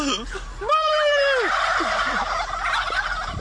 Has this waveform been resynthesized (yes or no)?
no